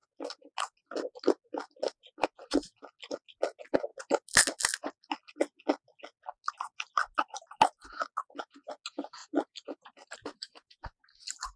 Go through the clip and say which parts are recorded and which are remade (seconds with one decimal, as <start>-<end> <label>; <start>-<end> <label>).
0.0-9.2 recorded; 9.2-10.8 remade; 10.8-11.6 recorded